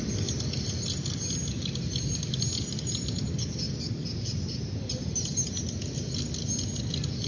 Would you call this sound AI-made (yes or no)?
no